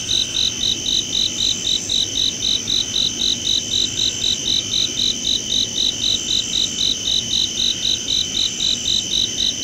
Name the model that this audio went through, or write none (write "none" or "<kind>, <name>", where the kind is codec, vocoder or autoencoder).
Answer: none